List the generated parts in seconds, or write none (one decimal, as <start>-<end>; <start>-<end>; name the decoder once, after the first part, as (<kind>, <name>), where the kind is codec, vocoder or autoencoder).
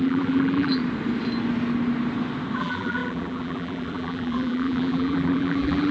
0.0-0.8 (vocoder, BigVGAN v2); 2.6-5.9